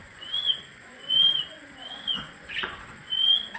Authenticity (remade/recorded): remade